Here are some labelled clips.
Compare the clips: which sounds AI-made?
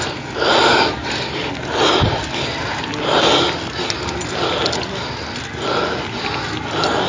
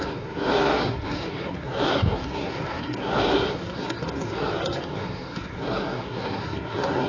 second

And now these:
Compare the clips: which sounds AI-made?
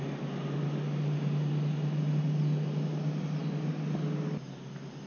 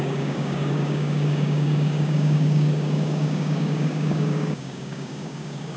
second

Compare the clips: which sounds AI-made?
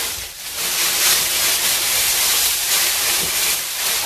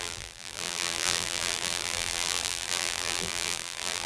second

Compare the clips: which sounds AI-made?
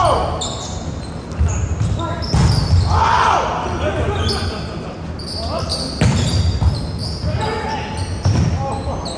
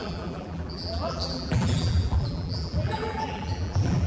second